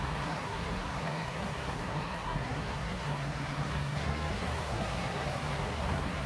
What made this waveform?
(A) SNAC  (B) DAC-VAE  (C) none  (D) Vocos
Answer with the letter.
A